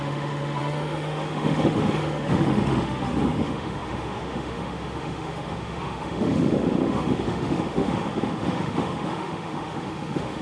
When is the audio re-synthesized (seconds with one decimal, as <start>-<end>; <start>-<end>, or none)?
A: 0.0-10.4

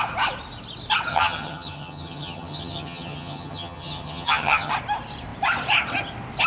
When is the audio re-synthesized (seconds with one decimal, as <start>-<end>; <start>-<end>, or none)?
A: 1.1-4.7

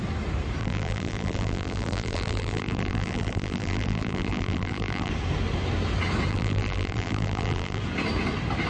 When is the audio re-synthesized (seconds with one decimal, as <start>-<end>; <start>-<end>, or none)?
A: 0.6-5.1; 6.3-7.8

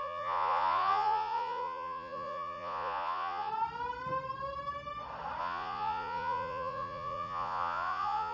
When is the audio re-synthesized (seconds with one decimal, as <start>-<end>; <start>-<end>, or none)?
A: 0.0-3.5; 5.4-8.3

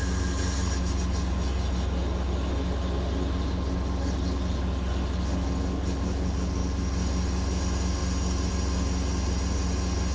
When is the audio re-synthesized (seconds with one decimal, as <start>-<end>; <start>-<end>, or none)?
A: none

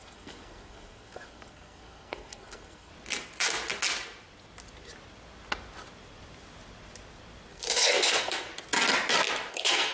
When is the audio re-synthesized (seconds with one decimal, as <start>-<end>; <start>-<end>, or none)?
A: 0.0-2.9; 7.5-8.5; 9.5-9.9

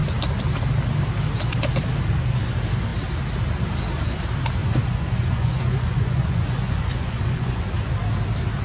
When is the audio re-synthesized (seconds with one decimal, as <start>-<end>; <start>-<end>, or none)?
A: 4.6-7.6

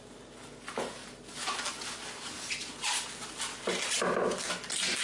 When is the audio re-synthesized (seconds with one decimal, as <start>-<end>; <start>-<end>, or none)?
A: none